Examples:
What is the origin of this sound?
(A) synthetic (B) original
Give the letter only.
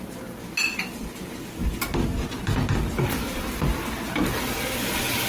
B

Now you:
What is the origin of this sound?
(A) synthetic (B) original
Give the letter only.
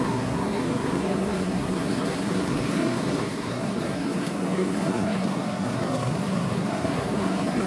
A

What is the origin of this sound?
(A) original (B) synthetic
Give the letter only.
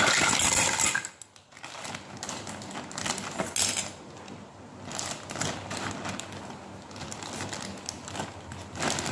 A